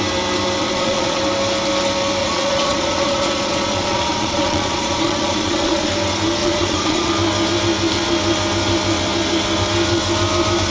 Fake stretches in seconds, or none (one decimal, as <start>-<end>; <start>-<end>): 0.6-1.2; 2.2-5.9; 6.4-7.1